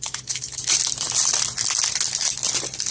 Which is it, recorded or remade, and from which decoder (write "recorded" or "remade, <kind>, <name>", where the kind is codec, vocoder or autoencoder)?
remade, vocoder, BigVGAN v2